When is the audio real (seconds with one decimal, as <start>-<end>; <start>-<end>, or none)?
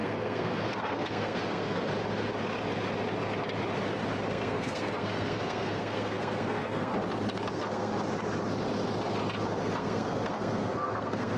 1.9-4.3; 6.9-7.5; 7.9-9.6